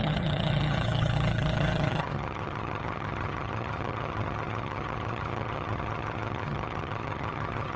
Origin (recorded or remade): remade